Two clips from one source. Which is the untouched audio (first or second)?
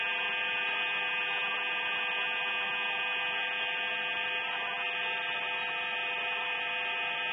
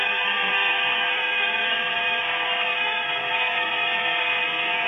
first